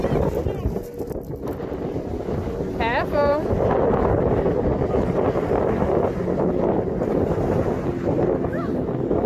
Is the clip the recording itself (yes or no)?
yes